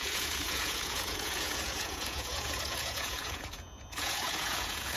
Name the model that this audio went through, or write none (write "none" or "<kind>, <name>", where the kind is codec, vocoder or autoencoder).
vocoder, Vocos